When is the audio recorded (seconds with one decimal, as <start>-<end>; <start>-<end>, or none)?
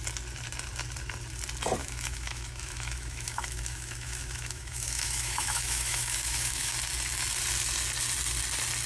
0.0-1.8; 6.7-8.9